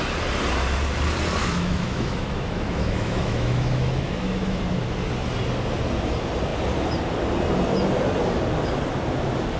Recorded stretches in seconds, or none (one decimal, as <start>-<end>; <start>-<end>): 0.0-1.4; 4.6-9.6